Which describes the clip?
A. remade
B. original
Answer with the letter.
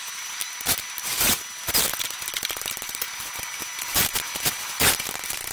B